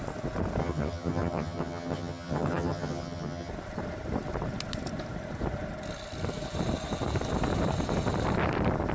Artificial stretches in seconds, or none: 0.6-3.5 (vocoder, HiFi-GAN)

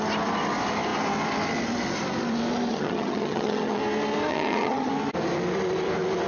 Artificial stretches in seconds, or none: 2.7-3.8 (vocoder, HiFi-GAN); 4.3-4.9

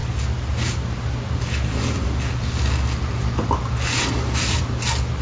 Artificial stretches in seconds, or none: none

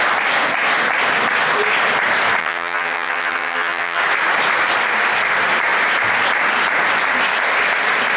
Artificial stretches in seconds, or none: 2.4-4.0 (vocoder, HiFi-GAN)